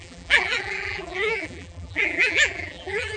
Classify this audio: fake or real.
fake